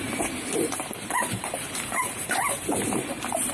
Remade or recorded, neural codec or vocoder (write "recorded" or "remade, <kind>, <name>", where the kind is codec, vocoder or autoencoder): remade, vocoder, BigVGAN v2